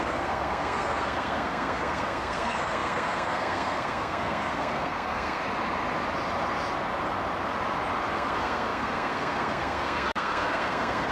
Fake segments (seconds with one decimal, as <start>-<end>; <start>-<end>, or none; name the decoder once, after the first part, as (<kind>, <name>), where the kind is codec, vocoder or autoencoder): 0.0-5.4 (codec, SNAC); 8.1-11.1